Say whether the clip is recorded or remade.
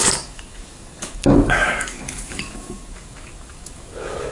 remade